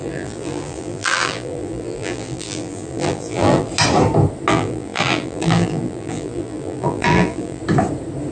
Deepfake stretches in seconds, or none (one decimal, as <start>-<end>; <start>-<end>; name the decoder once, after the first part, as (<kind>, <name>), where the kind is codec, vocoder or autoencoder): 0.0-3.7 (vocoder, BigVGAN v2); 4.5-7.6